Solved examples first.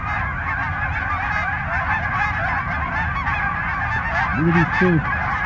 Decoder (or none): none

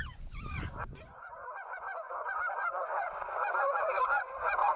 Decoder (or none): vocoder, Vocos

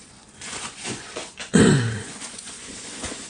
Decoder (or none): vocoder, Vocos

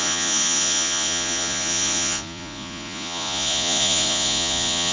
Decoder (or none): vocoder, Vocos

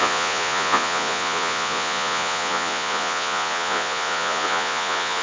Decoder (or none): vocoder, Vocos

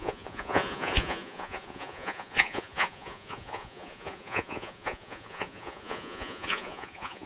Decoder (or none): vocoder, Vocos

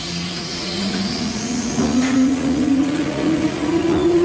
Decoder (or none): vocoder, Vocos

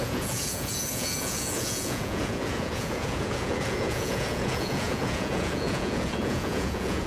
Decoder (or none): vocoder, Vocos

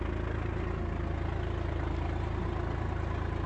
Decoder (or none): none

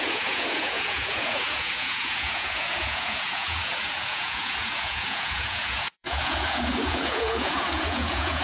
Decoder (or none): vocoder, Vocos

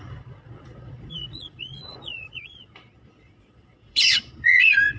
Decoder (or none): vocoder, Vocos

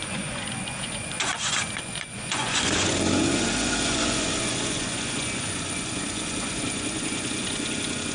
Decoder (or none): vocoder, Vocos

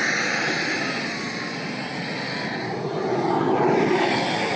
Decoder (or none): none